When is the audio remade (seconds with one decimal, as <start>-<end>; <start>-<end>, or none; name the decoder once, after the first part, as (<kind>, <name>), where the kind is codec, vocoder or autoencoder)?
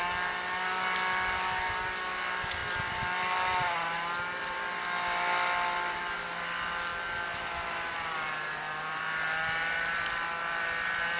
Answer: none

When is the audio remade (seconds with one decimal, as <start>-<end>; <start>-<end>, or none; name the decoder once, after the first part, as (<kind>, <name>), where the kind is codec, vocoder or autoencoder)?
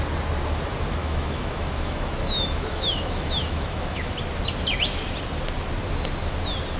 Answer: 1.0-4.1 (autoencoder, DAC-VAE)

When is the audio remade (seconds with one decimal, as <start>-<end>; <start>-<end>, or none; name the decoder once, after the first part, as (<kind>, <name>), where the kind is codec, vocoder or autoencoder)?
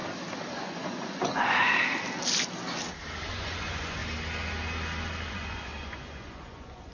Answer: 0.5-1.7 (vocoder, Vocos); 3.3-4.0; 5.3-6.9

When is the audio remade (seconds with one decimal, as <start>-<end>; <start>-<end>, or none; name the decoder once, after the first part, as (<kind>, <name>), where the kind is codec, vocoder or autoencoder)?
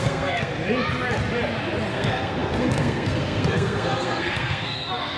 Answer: 0.0-0.5 (codec, SNAC); 1.9-5.2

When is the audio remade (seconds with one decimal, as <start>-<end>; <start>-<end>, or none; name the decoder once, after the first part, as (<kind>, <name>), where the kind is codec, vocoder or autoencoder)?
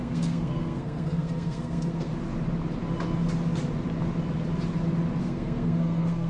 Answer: 0.0-2.1 (codec, SNAC); 5.2-6.3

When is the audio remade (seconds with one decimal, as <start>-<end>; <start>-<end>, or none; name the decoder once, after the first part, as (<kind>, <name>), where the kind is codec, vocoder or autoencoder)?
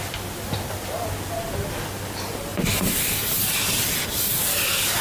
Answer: 2.5-3.0 (vocoder, BigVGAN v2)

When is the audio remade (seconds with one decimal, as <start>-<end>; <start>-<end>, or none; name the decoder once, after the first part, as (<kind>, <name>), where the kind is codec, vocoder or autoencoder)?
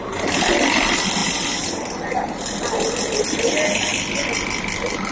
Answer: none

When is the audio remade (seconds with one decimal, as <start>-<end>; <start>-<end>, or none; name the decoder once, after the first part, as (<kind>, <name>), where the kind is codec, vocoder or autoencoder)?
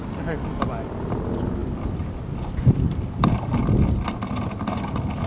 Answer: none